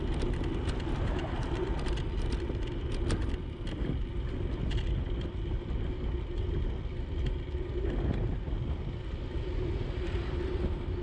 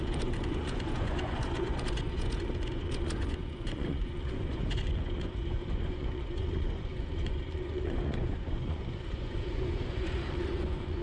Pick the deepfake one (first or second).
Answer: second